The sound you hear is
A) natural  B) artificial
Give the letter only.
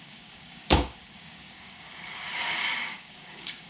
B